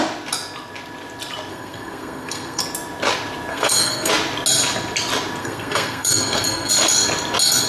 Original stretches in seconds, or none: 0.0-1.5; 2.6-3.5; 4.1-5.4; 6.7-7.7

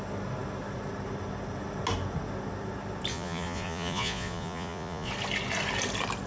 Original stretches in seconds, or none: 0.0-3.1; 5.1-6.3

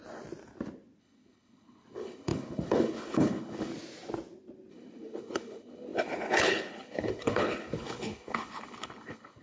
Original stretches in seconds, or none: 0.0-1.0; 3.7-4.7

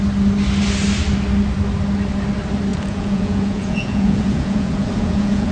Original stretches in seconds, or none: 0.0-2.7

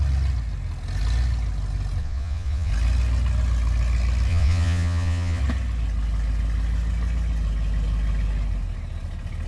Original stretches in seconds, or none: 0.0-2.0; 2.7-4.3; 5.4-9.5